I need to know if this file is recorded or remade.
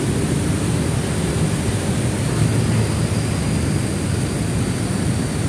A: recorded